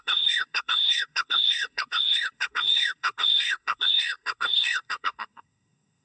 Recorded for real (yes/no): no